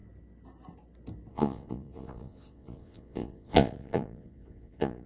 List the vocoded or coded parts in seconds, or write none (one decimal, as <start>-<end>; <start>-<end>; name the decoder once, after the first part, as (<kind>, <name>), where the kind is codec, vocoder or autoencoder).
1.3-5.1 (vocoder, Vocos)